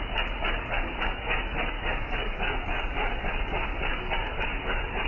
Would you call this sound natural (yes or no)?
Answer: no